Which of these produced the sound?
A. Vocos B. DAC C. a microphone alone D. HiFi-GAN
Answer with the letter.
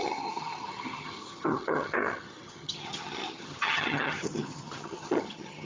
D